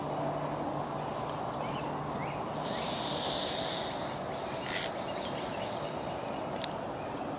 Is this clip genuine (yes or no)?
yes